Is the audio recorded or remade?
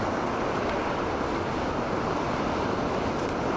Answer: recorded